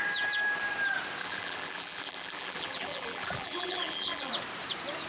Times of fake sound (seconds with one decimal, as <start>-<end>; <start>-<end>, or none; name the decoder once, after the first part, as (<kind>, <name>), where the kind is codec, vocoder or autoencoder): 1.2-4.3 (vocoder, BigVGAN v2)